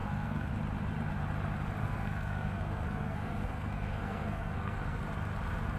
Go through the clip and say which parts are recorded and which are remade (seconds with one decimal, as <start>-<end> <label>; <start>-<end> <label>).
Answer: 0.0-0.5 remade; 0.5-1.8 recorded; 1.8-5.0 remade; 5.0-5.8 recorded